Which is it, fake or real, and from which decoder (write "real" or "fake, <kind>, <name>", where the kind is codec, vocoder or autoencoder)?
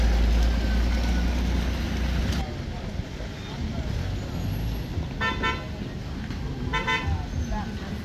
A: real